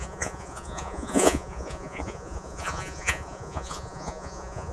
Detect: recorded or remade remade